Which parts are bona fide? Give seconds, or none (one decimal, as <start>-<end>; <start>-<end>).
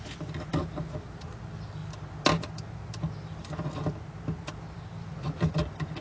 0.0-6.0